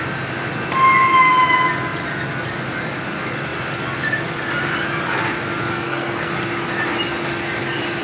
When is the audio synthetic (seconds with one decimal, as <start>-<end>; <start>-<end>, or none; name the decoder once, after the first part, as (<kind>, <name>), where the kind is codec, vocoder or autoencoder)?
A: 5.7-6.3 (codec, SNAC)